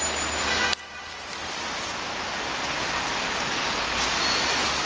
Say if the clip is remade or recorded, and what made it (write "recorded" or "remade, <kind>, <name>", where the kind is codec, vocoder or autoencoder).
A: recorded